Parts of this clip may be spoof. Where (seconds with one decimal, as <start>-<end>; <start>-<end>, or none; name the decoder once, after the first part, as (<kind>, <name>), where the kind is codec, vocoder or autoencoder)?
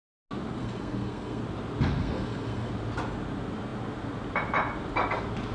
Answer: 0.6-1.4 (codec, SNAC); 2.0-2.7